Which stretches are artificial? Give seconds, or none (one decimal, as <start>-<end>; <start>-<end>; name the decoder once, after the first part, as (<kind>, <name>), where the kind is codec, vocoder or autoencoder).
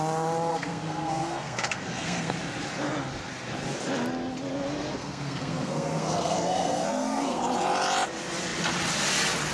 0.5-2.4 (codec, SNAC); 5.0-7.4